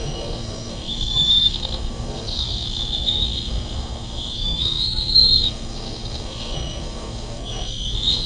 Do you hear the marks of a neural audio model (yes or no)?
yes